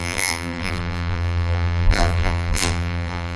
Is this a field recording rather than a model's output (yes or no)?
no